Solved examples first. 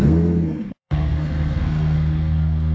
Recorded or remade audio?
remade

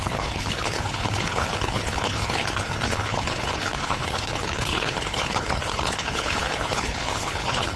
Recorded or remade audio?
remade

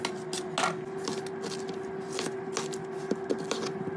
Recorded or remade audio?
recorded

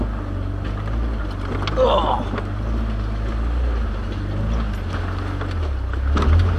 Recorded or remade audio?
recorded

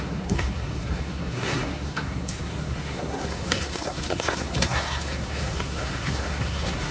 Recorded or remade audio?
remade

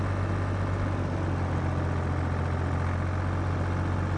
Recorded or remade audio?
recorded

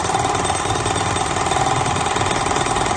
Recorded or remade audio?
recorded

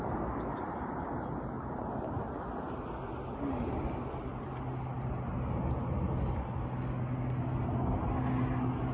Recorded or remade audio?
recorded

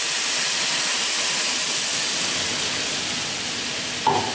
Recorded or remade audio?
recorded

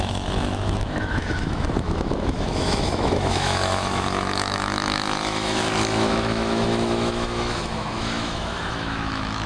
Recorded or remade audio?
remade